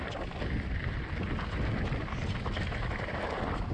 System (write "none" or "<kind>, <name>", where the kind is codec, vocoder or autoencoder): none